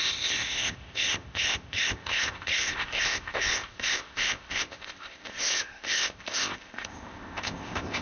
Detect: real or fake fake